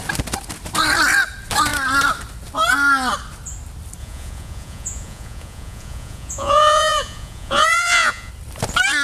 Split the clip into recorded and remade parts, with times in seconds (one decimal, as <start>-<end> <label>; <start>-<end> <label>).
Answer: 0.0-4.0 recorded; 4.0-8.3 remade; 8.3-9.0 recorded